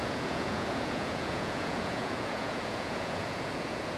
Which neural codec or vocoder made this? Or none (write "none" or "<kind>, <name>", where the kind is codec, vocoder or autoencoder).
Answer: vocoder, Vocos